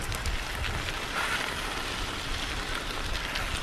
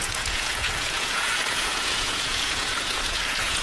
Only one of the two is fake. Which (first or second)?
second